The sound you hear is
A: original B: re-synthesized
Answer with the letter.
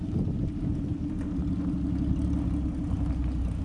A